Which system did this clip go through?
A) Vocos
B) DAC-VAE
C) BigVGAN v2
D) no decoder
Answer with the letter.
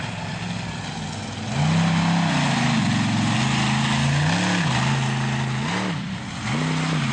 D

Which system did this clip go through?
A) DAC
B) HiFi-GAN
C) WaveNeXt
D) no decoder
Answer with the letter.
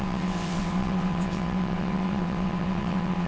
C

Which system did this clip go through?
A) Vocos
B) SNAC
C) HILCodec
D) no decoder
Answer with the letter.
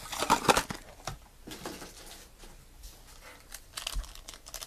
D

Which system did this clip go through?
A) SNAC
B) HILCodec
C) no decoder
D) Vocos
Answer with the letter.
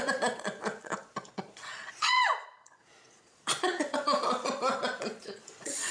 D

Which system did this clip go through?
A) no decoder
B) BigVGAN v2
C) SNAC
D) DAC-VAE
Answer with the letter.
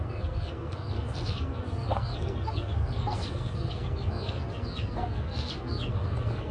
C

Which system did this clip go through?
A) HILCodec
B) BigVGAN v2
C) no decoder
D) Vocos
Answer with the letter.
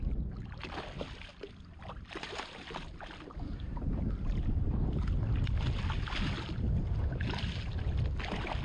C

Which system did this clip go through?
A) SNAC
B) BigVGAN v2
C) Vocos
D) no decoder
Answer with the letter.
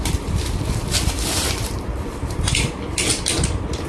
B